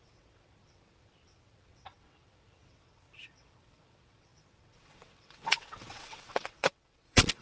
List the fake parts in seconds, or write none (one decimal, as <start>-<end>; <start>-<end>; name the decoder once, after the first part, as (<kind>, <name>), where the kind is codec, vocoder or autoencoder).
0.0-7.4 (vocoder, WaveNeXt)